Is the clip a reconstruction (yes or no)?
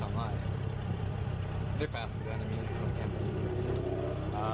no